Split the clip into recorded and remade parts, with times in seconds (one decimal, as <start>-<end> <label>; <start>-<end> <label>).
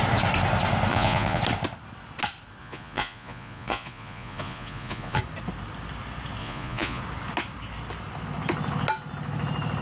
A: 0.0-0.9 recorded; 0.9-1.4 remade; 1.4-2.6 recorded; 2.6-5.2 remade; 5.2-6.4 recorded; 6.4-7.0 remade; 7.0-9.8 recorded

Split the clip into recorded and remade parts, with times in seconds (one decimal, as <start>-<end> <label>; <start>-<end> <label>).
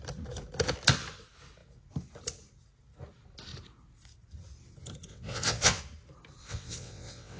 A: 0.0-5.1 recorded; 5.1-5.8 remade; 5.8-6.4 recorded; 6.4-7.4 remade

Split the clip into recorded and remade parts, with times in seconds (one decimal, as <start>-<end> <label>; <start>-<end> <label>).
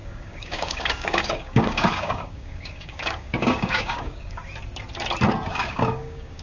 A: 0.0-4.4 remade; 4.4-5.5 recorded; 5.5-6.4 remade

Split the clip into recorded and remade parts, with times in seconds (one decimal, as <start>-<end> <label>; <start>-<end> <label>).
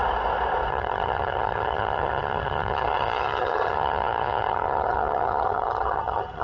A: 0.0-0.7 recorded; 0.7-6.4 remade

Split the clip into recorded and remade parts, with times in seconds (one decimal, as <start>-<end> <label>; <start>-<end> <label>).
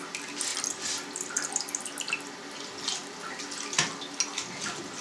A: 0.0-0.5 recorded; 0.5-1.5 remade; 1.5-5.0 recorded